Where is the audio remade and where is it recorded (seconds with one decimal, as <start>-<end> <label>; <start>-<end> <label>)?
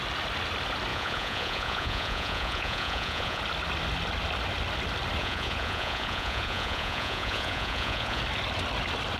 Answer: 0.0-0.9 recorded; 0.9-3.4 remade; 3.4-5.2 recorded; 5.2-8.2 remade; 8.2-9.2 recorded